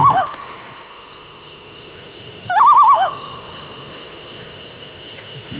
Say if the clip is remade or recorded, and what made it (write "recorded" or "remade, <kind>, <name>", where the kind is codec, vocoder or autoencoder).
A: remade, autoencoder, DAC-VAE